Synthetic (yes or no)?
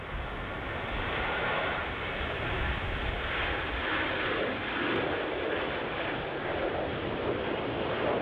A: no